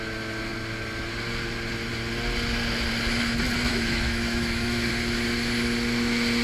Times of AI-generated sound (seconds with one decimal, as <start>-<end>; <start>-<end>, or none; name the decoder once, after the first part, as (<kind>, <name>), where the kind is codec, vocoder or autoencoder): 3.7-4.9 (autoencoder, DAC-VAE)